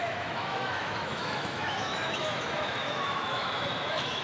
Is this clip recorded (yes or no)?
no